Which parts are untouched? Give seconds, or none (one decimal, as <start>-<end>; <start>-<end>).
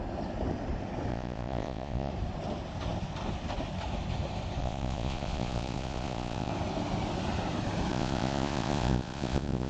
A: 0.0-1.1; 2.1-4.6; 6.5-7.9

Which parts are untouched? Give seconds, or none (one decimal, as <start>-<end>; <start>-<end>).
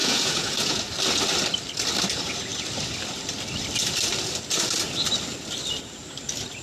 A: 0.8-6.6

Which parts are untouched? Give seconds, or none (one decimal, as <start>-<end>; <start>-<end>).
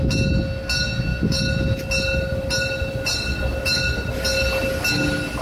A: 0.0-5.4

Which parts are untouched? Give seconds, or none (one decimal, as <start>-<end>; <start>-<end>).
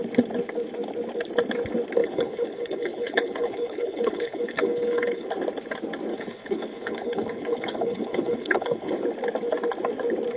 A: 0.0-2.0; 5.3-6.1; 9.0-10.4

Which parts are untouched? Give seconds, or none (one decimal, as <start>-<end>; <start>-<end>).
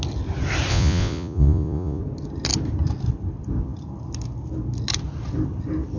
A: 0.0-0.7; 2.0-6.0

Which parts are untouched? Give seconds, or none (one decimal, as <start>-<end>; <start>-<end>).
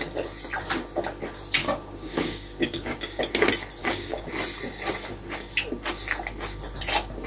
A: 0.0-1.6; 3.2-3.8; 4.3-7.3